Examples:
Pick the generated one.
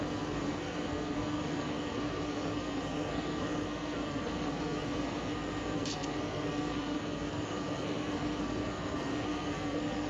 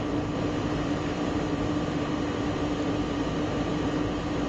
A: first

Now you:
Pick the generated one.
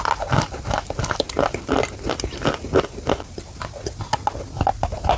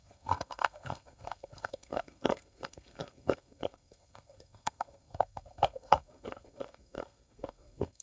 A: second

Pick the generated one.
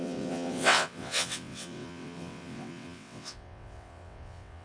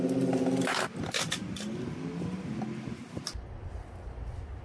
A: first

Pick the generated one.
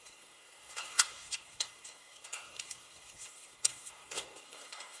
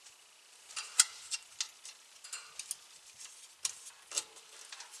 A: first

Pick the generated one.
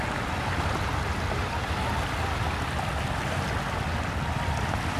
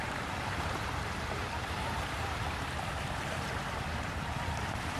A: second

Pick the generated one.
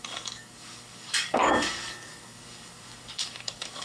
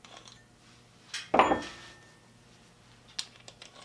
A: first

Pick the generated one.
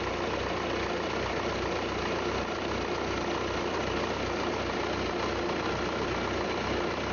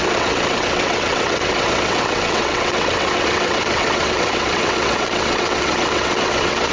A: second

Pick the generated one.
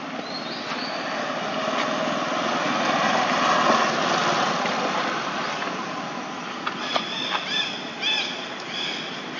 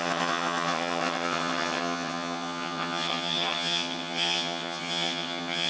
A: second